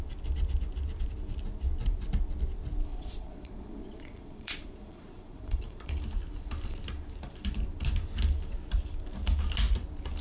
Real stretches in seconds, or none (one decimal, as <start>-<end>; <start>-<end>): 0.0-2.9; 5.9-10.2